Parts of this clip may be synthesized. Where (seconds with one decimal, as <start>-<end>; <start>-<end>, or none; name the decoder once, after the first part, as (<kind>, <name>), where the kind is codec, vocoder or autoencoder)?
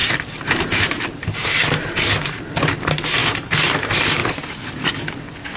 0.0-2.4 (vocoder, BigVGAN v2); 3.2-3.7; 4.2-4.9